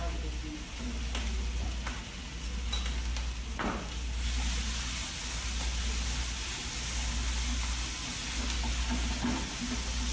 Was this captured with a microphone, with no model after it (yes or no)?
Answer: yes